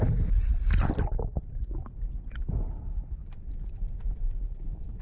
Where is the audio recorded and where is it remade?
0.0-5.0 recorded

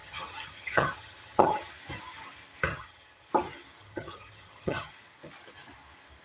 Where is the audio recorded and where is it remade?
0.0-1.7 remade; 1.7-2.7 recorded; 2.7-3.3 remade; 3.3-3.8 recorded; 3.8-4.9 remade; 4.9-6.2 recorded

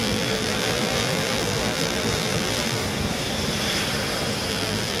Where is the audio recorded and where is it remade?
0.0-2.8 remade; 2.8-4.5 recorded; 4.5-5.0 remade

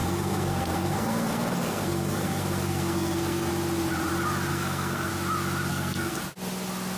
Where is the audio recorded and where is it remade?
0.0-3.5 remade; 3.5-4.5 recorded; 4.5-5.1 remade; 5.1-5.7 recorded; 5.7-6.2 remade; 6.2-7.0 recorded

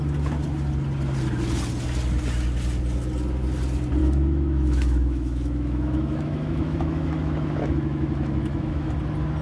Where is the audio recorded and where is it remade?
0.0-4.0 recorded; 4.0-8.9 remade; 8.9-9.4 recorded